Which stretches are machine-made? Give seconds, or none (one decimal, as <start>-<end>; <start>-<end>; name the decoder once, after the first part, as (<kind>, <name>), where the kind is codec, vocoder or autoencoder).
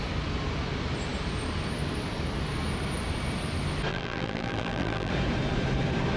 3.9-5.1 (vocoder, BigVGAN v2)